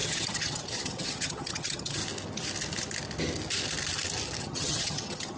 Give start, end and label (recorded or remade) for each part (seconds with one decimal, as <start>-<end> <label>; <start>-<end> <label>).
0.0-2.0 remade; 2.0-4.4 recorded; 4.4-5.4 remade